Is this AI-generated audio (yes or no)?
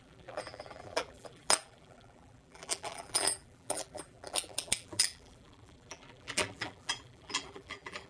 yes